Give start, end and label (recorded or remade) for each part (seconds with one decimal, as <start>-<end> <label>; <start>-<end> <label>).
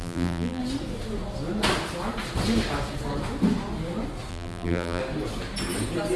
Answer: 0.0-0.6 remade; 0.6-4.3 recorded; 4.3-5.0 remade; 5.0-6.2 recorded